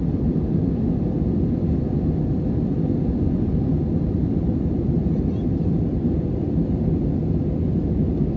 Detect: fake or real real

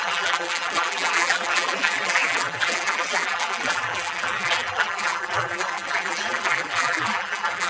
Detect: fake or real fake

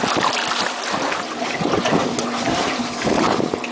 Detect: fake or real real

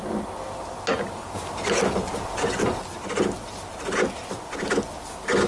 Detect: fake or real real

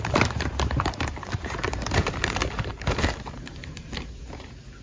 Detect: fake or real fake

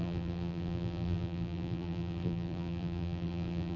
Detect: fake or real fake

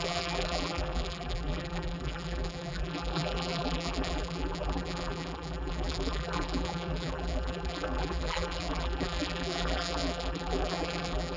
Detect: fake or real fake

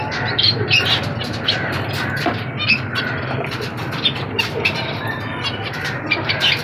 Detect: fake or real fake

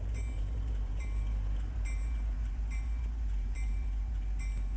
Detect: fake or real fake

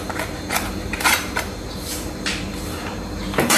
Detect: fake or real fake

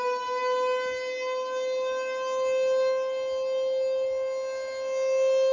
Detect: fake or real real